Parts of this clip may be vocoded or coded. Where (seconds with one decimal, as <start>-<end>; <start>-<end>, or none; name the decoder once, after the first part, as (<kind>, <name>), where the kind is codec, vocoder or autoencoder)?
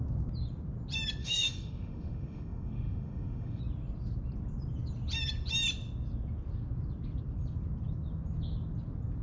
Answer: 1.2-3.6 (autoencoder, DAC-VAE)